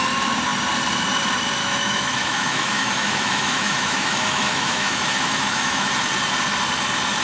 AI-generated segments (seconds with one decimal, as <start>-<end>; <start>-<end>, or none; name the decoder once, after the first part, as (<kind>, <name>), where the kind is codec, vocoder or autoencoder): 1.6-5.9 (autoencoder, DAC-VAE)